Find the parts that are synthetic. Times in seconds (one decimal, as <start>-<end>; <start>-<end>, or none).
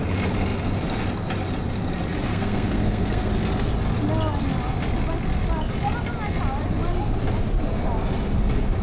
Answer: 2.3-3.3